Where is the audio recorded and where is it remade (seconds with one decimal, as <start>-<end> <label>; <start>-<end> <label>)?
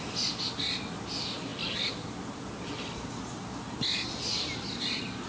0.0-5.3 recorded